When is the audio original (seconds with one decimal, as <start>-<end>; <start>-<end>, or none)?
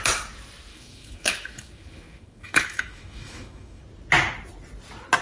0.0-0.7; 3.8-5.2